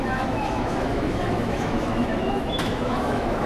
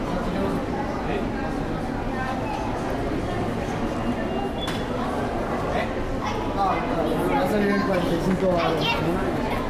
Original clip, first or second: second